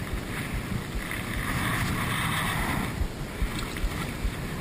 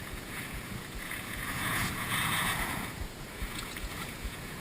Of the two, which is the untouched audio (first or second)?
first